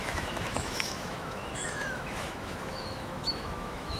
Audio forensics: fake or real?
fake